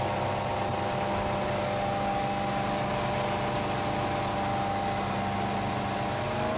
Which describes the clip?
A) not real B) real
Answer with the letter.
B